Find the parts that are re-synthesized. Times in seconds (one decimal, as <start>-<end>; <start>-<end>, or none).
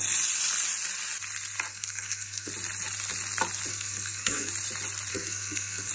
1.7-2.5; 3.7-4.5; 5.1-5.9